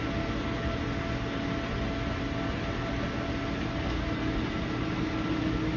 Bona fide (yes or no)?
yes